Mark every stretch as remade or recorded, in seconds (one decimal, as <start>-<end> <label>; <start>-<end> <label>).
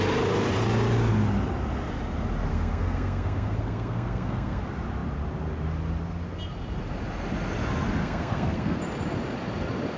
0.0-2.5 recorded; 2.5-4.6 remade; 4.6-8.0 recorded; 8.0-8.8 remade; 8.8-10.0 recorded